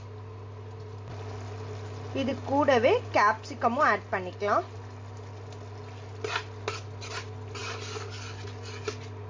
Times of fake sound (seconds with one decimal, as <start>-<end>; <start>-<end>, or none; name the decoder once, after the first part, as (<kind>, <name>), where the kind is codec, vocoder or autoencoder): none